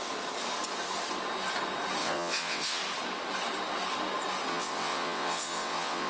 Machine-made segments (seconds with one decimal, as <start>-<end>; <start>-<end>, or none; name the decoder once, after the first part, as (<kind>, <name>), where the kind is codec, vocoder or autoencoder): 2.0-2.8 (vocoder, WaveNeXt); 4.5-6.1